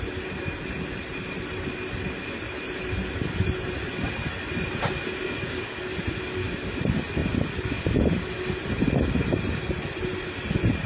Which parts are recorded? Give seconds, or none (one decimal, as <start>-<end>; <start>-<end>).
0.0-5.2; 5.8-10.9